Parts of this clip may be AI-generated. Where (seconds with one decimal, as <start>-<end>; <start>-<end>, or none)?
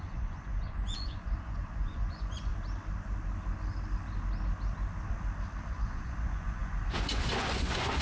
0.0-2.5; 5.7-8.0